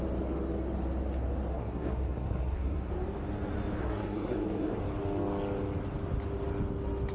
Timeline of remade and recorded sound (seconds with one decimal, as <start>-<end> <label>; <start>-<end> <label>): 0.0-1.5 recorded; 1.5-2.9 remade; 2.9-3.8 recorded; 3.8-4.8 remade; 4.8-7.1 recorded